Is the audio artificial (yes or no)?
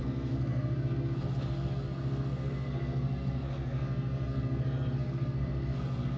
yes